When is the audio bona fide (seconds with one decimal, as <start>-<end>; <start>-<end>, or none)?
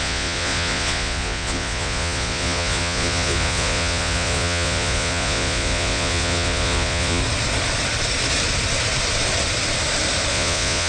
7.2-10.3